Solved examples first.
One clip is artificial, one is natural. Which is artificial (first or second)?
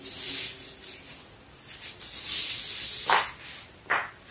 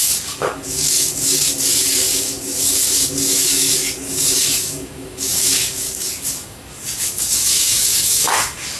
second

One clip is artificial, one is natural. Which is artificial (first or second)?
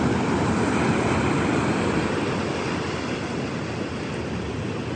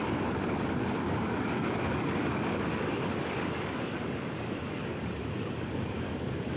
second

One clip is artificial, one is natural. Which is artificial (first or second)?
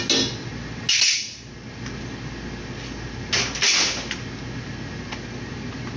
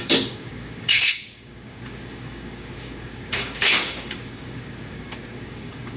second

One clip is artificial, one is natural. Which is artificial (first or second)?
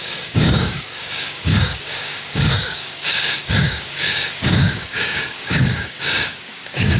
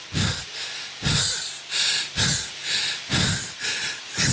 first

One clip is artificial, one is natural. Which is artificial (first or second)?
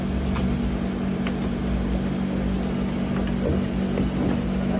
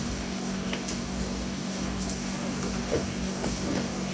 second